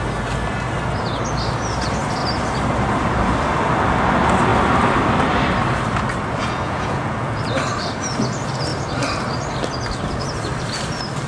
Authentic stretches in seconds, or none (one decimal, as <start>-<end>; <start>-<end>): 0.0-6.4; 7.4-11.3